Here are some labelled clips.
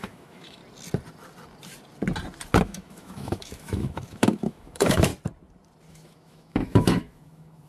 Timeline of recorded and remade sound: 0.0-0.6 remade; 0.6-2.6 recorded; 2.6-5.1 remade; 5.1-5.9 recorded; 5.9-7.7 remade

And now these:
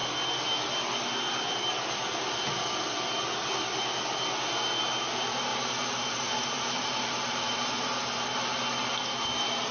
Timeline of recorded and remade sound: 0.0-4.8 recorded; 4.8-5.5 remade; 5.5-6.0 recorded; 6.0-8.0 remade; 8.0-9.0 recorded; 9.0-9.7 remade

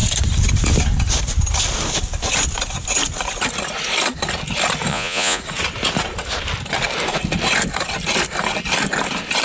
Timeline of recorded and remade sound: 0.0-4.9 recorded; 4.9-5.4 remade; 5.4-9.4 recorded